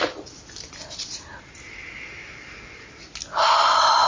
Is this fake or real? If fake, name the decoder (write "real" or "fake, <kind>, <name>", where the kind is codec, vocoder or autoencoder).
real